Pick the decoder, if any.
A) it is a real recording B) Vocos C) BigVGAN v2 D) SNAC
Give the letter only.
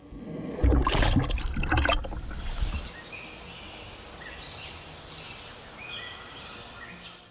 A